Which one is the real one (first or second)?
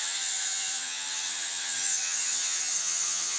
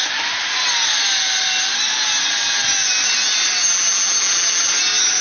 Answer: second